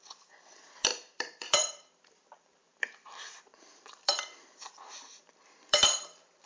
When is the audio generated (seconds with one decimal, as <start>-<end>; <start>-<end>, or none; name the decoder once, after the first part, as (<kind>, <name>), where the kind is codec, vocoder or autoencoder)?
0.0-6.5 (vocoder, BigVGAN v2)